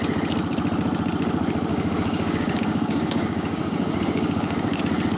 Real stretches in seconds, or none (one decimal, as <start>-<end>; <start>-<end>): 0.0-1.7; 4.8-5.2